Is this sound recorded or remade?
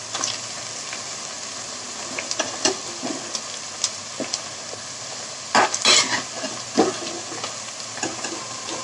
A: recorded